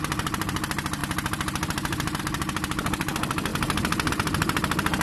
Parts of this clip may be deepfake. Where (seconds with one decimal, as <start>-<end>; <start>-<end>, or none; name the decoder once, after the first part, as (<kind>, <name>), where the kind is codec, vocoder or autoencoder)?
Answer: 0.0-5.0 (vocoder, BigVGAN v2)